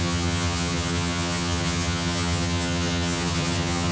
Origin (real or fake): fake